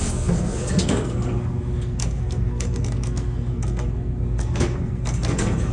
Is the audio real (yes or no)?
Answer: no